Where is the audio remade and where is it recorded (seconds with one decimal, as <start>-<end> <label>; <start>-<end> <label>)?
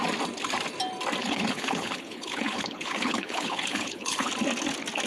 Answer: 0.0-1.2 recorded; 1.2-4.3 remade; 4.3-5.1 recorded